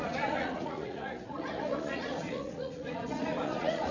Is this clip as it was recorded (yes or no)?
no